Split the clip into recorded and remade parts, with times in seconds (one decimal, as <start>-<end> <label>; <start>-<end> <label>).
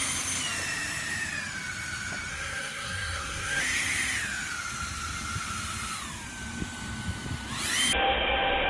0.0-2.3 recorded; 2.3-3.6 remade; 3.6-8.7 recorded